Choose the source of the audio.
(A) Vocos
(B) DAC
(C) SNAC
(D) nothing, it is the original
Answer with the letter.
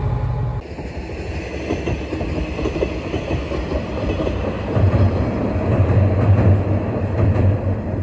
D